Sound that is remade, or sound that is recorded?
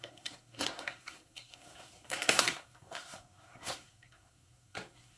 remade